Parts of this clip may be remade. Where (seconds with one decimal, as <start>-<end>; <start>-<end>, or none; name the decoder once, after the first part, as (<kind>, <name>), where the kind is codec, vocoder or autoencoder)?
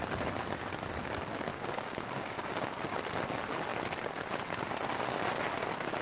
1.5-2.7 (codec, DAC)